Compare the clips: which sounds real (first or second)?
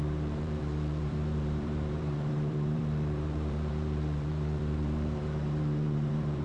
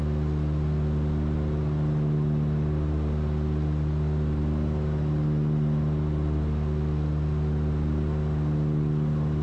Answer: second